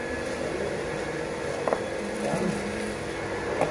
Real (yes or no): yes